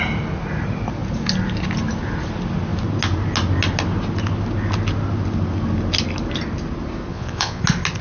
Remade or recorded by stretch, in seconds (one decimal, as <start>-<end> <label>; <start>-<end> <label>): 0.0-7.1 recorded; 7.1-7.6 remade; 7.6-8.0 recorded